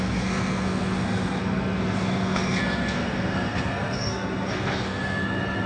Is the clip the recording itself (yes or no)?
no